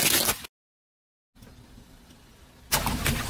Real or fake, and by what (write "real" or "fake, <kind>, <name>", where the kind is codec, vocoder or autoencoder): real